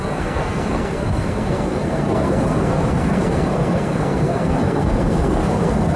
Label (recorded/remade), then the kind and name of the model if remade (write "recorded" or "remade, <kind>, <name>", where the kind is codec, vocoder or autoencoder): remade, codec, SNAC